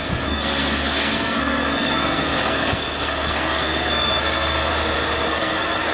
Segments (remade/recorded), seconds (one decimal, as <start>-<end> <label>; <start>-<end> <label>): 0.0-4.7 remade; 4.7-5.3 recorded; 5.3-5.9 remade